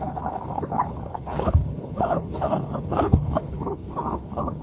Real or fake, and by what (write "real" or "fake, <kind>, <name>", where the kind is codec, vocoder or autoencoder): fake, codec, HILCodec